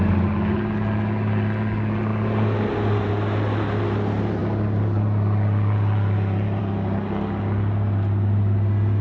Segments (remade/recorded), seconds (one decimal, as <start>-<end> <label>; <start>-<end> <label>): 0.0-9.0 recorded